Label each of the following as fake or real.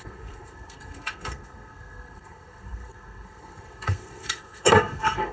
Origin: fake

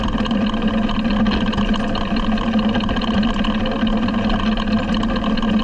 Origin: real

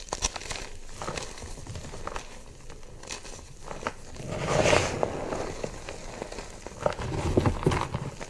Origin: real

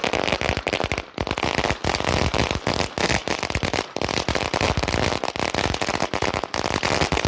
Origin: real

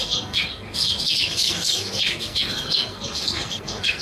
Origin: fake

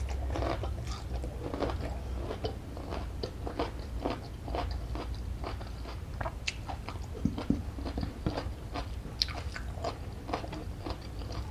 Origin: real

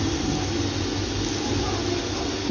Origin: real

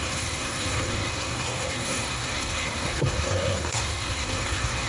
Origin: fake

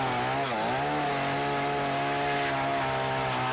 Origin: real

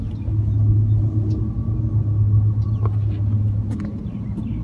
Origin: real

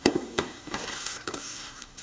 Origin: fake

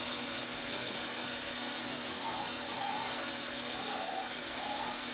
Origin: fake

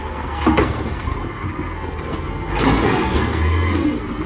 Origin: fake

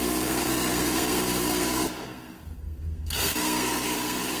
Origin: fake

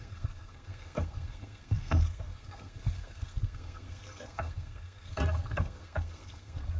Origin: fake